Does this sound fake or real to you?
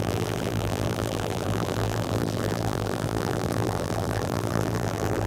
fake